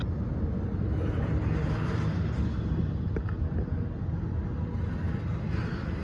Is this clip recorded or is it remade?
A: recorded